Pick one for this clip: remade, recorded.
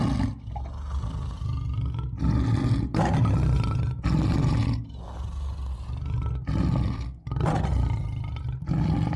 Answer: recorded